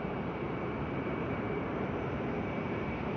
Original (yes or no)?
no